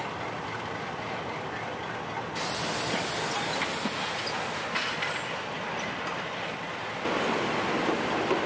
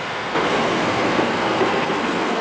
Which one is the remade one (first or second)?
second